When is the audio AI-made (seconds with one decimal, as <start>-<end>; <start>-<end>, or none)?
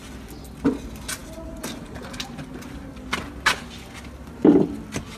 none